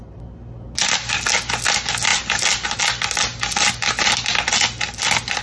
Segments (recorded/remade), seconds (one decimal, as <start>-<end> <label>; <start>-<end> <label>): 0.0-5.4 recorded